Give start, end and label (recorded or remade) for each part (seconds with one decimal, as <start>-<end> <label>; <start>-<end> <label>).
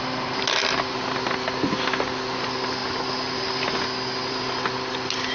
0.0-5.3 recorded